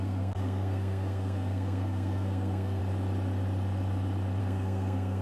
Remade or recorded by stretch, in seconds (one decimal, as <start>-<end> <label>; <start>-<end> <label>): 0.0-2.8 remade; 2.8-4.4 recorded; 4.4-5.2 remade